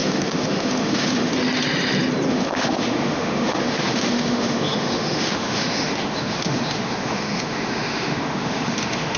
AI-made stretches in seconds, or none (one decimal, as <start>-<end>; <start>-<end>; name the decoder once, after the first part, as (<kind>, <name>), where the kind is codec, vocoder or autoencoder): 0.0-1.3 (autoencoder, DAC-VAE); 2.3-9.2